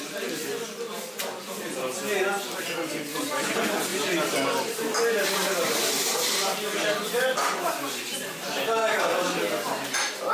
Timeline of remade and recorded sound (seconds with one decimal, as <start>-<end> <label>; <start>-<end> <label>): 0.0-3.9 recorded; 3.9-7.1 remade; 7.1-8.8 recorded; 8.8-10.3 remade